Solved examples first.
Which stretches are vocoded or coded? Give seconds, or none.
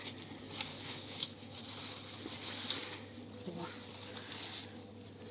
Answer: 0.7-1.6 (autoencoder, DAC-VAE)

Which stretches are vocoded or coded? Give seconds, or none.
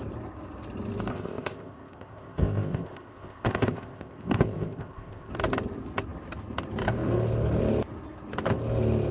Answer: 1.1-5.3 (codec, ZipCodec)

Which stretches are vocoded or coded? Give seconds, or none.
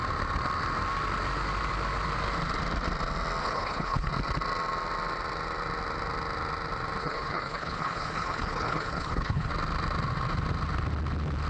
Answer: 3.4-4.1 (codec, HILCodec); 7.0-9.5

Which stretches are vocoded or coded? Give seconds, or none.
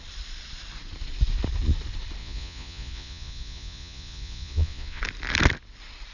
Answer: 2.2-5.0 (vocoder, Vocos)